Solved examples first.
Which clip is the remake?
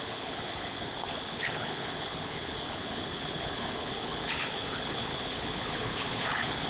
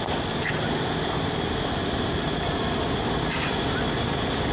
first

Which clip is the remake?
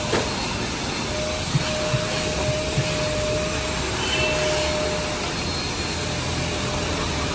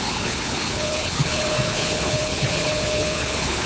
second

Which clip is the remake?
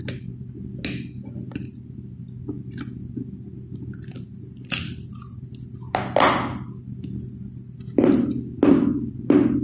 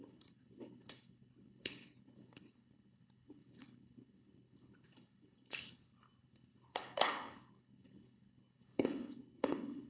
second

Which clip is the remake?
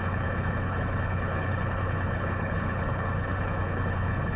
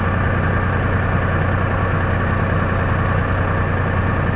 first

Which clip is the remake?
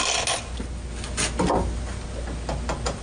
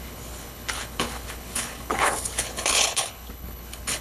second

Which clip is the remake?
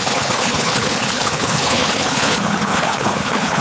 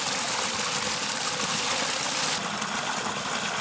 first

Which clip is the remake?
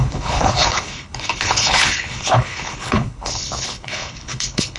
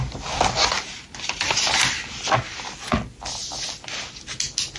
first